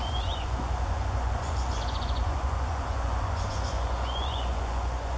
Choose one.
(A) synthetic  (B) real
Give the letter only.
A